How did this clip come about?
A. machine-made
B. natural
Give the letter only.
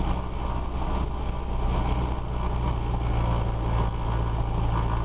B